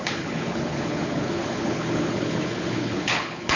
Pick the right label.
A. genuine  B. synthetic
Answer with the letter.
B